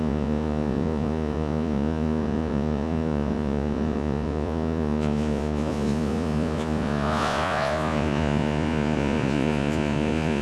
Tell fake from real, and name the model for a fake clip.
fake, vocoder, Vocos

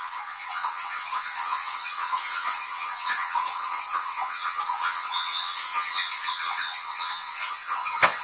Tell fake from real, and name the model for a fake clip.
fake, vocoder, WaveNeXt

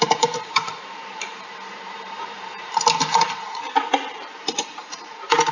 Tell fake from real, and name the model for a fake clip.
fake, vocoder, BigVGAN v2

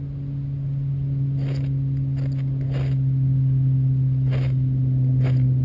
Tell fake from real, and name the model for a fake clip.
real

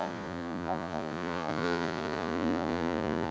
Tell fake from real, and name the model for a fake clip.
fake, vocoder, Vocos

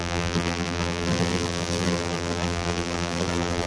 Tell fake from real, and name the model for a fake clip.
fake, vocoder, BigVGAN v2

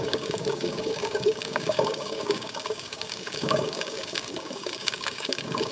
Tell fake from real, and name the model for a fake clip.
fake, codec, DAC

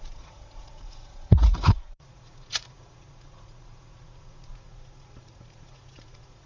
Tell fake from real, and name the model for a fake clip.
fake, vocoder, Vocos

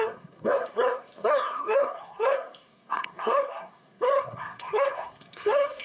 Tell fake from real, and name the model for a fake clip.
fake, codec, SNAC